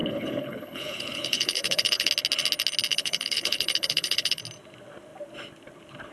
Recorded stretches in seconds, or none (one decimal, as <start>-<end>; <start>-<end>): 2.1-2.9; 4.4-6.1

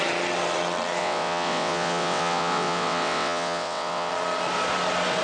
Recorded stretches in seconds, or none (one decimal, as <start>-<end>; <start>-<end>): 0.0-1.0; 4.1-5.2

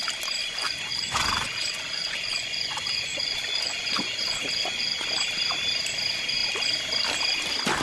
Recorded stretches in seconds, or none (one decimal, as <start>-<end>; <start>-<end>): 0.0-0.4; 5.1-7.8

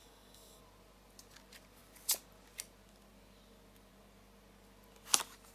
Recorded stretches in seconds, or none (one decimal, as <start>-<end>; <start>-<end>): 0.6-5.5

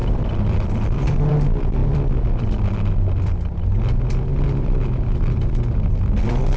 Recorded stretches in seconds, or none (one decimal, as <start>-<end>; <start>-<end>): none

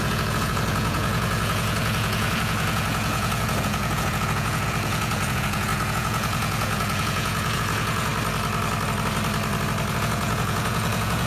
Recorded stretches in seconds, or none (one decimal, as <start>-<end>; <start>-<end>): 8.1-9.9

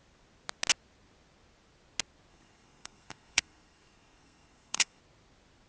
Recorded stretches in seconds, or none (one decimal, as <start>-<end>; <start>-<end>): 0.0-2.3; 5.0-5.7

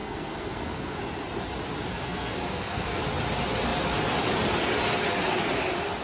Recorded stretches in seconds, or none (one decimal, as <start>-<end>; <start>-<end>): 1.0-1.9; 3.0-6.0